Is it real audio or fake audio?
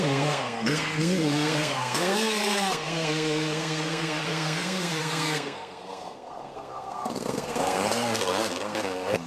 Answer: fake